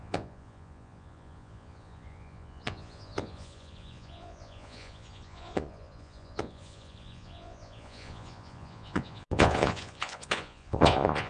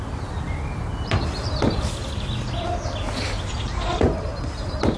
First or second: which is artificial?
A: first